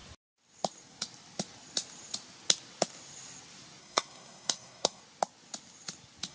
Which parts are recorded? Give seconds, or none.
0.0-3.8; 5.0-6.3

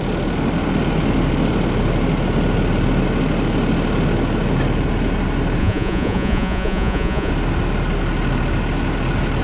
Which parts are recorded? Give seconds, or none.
0.0-5.6; 7.3-9.4

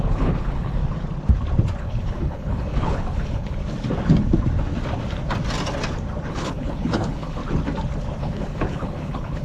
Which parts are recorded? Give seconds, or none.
0.8-1.8; 3.6-6.3; 7.4-8.2